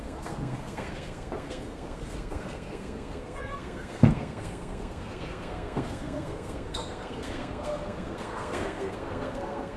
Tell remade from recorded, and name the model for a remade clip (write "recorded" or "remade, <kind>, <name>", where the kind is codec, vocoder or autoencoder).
remade, codec, SNAC